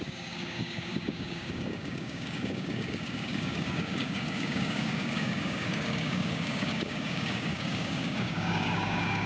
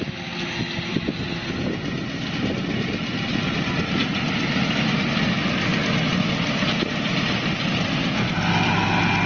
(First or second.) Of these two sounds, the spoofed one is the first